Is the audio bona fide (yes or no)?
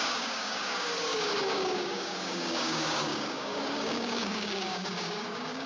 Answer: no